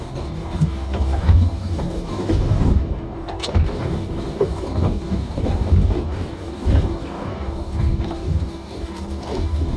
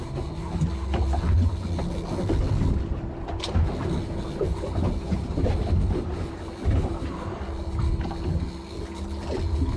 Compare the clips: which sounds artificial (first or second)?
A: first